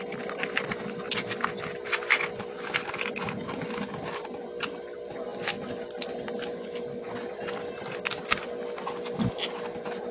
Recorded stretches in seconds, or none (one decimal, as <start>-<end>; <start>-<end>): 0.0-10.1